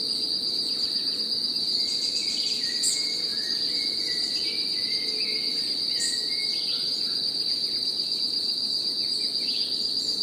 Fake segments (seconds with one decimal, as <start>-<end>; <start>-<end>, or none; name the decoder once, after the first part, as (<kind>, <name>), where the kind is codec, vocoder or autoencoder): none